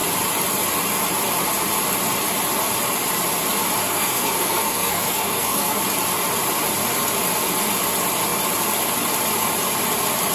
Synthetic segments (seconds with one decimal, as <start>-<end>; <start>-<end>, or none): 3.8-5.8

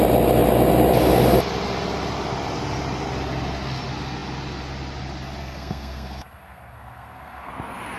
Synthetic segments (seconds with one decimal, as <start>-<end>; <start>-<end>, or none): 5.4-7.5

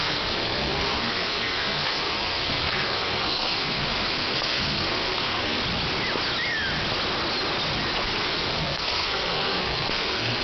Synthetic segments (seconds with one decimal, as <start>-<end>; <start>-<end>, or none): 0.0-5.6; 8.2-10.4

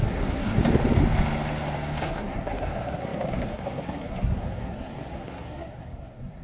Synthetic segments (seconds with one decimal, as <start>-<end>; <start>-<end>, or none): 0.0-0.6; 2.0-6.4

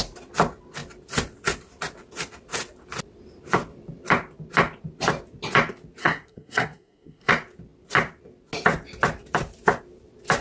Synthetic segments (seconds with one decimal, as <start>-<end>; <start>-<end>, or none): 6.0-7.3

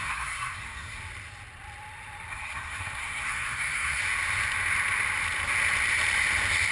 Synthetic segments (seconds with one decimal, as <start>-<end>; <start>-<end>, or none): 0.0-1.0; 2.3-4.0

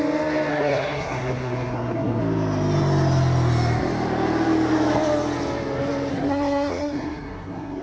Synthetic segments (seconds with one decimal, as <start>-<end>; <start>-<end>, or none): 0.5-2.2; 6.1-7.8

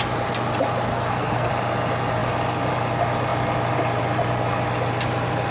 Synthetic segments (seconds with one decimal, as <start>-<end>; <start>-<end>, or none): 0.9-1.5